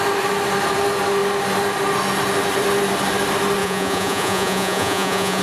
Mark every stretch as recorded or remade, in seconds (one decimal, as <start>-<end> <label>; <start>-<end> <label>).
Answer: 0.0-3.6 recorded; 3.6-5.4 remade